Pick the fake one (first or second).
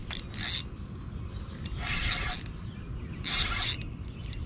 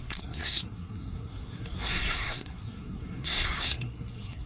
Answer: second